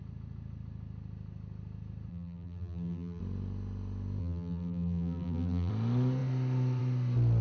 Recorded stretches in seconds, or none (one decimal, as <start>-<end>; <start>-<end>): 0.0-2.1; 3.2-4.2; 5.7-7.4